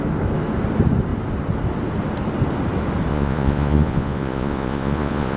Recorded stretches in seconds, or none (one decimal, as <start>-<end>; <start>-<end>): 0.0-3.1